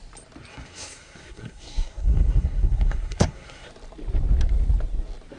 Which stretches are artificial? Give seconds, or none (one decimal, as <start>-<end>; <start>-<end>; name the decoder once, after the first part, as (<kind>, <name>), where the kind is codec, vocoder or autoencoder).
0.5-3.7 (codec, SNAC)